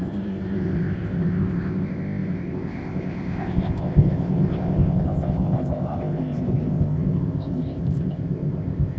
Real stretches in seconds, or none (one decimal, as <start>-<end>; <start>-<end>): none